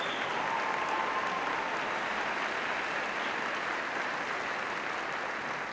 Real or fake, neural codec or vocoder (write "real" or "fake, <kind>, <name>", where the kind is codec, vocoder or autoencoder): real